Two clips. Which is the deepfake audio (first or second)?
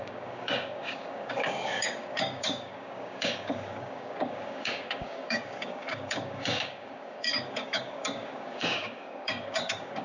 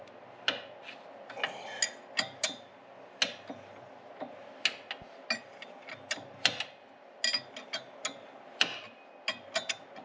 first